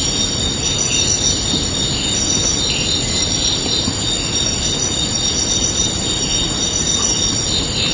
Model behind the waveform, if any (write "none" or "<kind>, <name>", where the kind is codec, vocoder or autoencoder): none